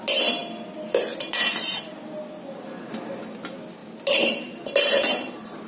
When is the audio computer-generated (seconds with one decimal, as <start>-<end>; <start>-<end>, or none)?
none